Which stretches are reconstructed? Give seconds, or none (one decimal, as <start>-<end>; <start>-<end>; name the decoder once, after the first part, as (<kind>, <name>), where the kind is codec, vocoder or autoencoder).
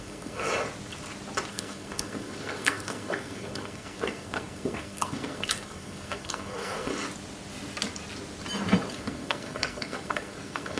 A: 0.0-0.5 (codec, SNAC); 1.5-6.9; 8.9-10.8